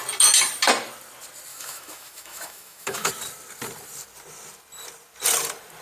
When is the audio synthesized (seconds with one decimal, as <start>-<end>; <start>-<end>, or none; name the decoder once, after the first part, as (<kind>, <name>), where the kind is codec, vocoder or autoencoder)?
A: 1.5-3.1 (autoencoder, DAC-VAE)